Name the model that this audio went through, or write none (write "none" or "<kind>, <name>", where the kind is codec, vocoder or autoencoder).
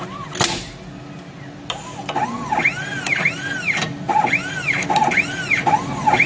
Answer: none